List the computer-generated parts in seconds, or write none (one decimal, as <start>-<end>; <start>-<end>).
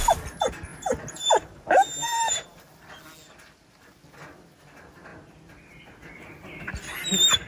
0.7-2.6